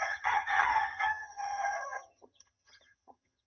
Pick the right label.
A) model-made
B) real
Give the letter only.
A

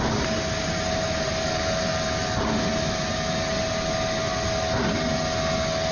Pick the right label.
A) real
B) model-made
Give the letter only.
A